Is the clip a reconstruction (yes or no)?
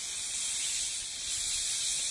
no